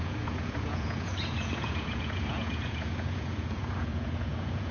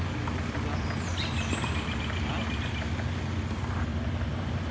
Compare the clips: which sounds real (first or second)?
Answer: second